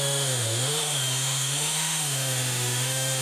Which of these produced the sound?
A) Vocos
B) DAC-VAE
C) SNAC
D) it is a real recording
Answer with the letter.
B